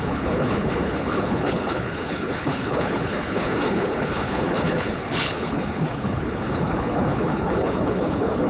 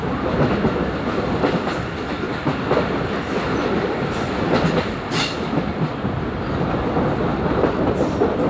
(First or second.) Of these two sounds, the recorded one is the second